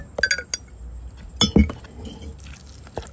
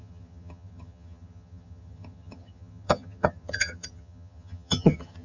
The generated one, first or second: second